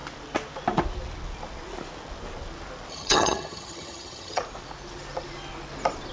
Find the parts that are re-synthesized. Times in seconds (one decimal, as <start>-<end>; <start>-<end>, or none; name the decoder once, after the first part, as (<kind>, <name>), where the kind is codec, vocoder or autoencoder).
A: 2.9-4.4 (vocoder, HiFi-GAN)